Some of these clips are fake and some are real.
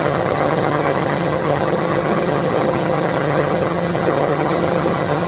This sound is fake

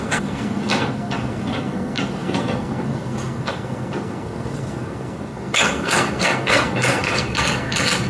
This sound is fake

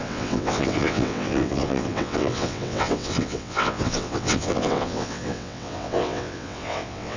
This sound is fake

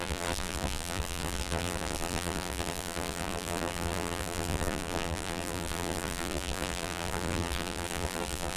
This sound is fake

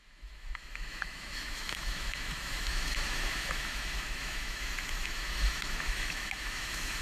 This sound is fake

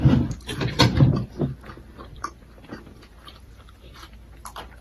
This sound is fake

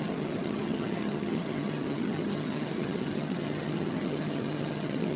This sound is fake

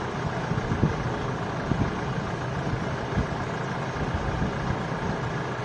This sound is real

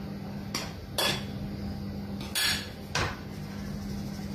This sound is real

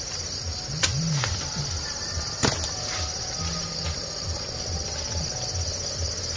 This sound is real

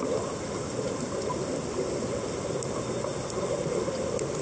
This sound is real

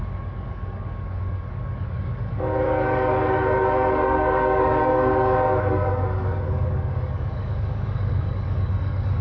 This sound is fake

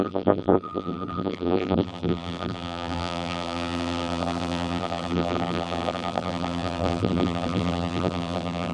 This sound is fake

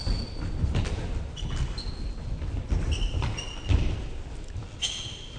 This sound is real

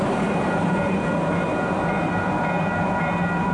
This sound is fake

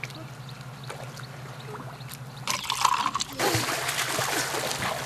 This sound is real